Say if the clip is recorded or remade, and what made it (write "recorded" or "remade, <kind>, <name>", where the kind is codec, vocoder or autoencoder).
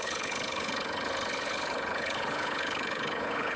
remade, codec, HILCodec